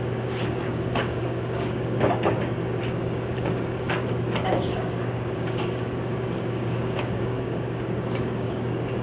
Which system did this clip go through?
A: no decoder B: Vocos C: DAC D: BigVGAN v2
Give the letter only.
C